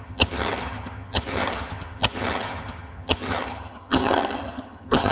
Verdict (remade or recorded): remade